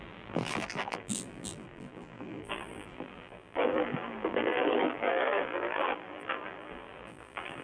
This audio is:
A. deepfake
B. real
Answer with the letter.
A